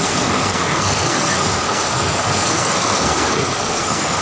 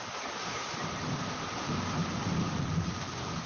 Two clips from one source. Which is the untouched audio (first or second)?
second